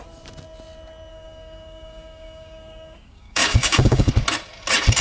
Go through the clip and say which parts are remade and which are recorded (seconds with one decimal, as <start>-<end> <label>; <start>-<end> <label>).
0.0-1.1 recorded; 1.1-4.1 remade; 4.1-5.0 recorded